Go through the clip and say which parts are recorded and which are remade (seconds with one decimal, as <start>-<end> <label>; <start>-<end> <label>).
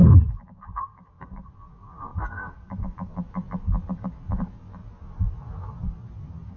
0.0-1.5 remade; 1.5-2.1 recorded; 2.1-3.3 remade; 3.3-4.8 recorded; 4.8-6.6 remade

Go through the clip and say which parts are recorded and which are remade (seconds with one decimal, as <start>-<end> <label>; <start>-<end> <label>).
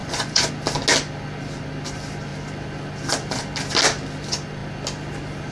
0.0-0.5 remade; 0.5-5.5 recorded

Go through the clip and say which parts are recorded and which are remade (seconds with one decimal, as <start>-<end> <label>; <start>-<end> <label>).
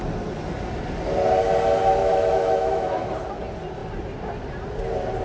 0.0-2.0 recorded; 2.0-3.1 remade; 3.1-5.2 recorded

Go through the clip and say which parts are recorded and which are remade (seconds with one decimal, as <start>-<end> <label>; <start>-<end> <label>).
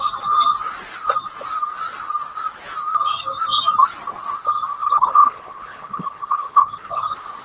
0.0-4.8 recorded; 4.8-7.0 remade; 7.0-7.4 recorded